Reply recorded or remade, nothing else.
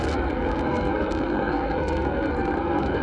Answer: remade